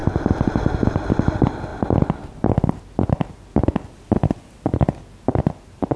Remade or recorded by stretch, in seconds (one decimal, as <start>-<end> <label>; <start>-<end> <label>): 0.0-6.0 recorded